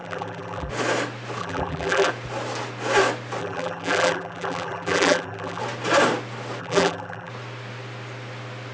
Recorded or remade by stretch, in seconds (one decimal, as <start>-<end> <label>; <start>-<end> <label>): 0.0-0.7 remade; 0.7-1.4 recorded; 1.4-2.1 remade; 2.1-3.4 recorded; 3.4-5.6 remade; 5.6-6.6 recorded; 6.6-7.3 remade; 7.3-8.7 recorded